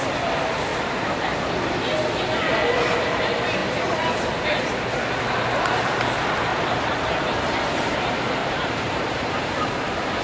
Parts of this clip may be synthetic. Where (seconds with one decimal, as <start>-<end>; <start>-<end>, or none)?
6.5-7.6; 8.4-9.6